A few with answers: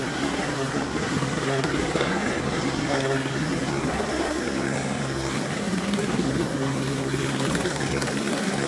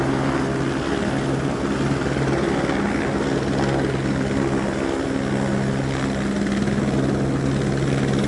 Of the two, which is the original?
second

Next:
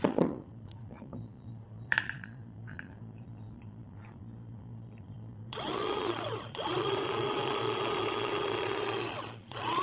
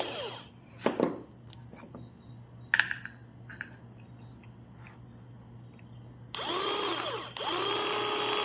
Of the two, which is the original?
second